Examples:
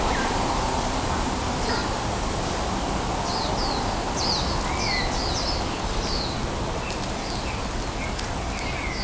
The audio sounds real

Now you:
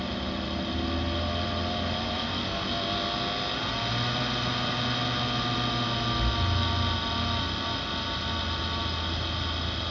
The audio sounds real